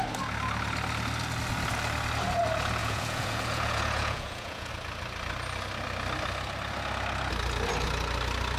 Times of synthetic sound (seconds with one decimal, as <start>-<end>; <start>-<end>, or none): 2.8-4.7